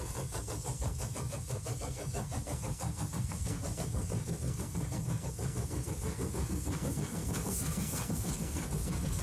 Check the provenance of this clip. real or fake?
fake